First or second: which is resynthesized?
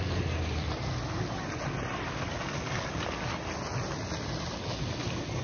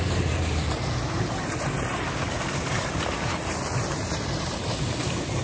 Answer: second